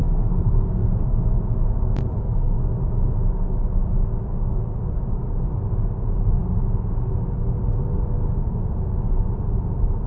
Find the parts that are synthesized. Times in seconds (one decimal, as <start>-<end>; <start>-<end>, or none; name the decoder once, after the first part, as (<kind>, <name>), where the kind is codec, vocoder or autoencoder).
0.0-1.1 (codec, SNAC); 2.1-2.6